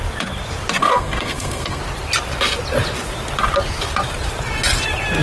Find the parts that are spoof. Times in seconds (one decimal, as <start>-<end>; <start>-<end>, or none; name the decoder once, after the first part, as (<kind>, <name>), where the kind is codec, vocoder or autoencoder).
0.8-1.8 (codec, SNAC)